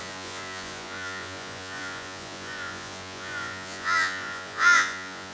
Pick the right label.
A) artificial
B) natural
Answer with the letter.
A